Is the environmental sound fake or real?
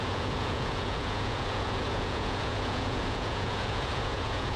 fake